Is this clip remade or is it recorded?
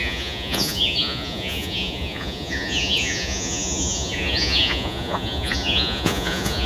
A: remade